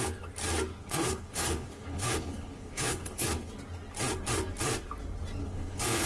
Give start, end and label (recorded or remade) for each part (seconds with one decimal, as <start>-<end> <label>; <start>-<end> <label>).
0.0-0.8 recorded; 0.8-3.5 remade; 3.5-5.4 recorded; 5.4-6.1 remade